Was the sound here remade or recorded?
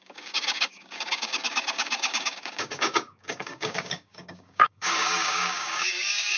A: remade